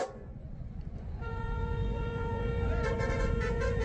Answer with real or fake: fake